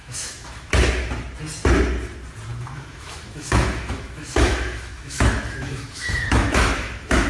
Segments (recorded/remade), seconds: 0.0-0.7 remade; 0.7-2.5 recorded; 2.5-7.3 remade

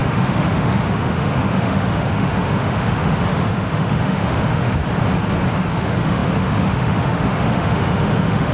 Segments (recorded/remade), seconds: 0.0-4.8 remade; 4.8-5.7 recorded; 5.7-8.5 remade

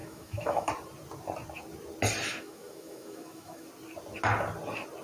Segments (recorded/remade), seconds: 0.0-0.7 remade; 0.7-2.3 recorded; 2.3-3.7 remade; 3.7-5.0 recorded

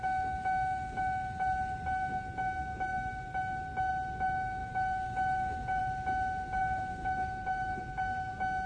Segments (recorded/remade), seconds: 0.0-4.6 recorded; 4.6-5.8 remade; 5.8-6.6 recorded; 6.6-7.8 remade; 7.8-8.7 recorded

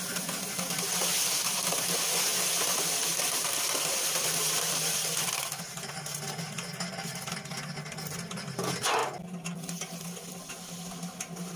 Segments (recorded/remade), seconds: 0.0-11.6 recorded

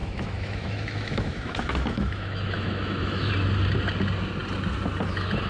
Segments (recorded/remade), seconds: 0.0-3.3 remade; 3.3-5.5 recorded

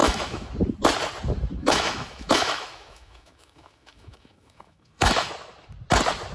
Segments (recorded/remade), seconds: 0.0-0.5 remade; 0.5-1.6 recorded; 1.6-5.3 remade; 5.3-6.3 recorded

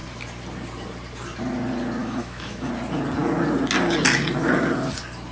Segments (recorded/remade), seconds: 0.0-2.0 recorded; 2.0-2.7 remade; 2.7-5.3 recorded